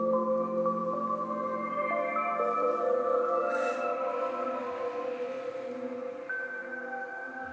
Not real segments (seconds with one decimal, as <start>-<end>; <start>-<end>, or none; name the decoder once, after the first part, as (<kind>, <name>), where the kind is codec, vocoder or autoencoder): none